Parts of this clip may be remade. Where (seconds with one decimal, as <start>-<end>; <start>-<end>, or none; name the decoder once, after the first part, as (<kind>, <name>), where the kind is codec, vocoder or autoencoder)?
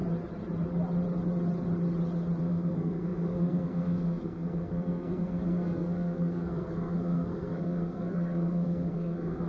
2.4-9.5 (codec, SNAC)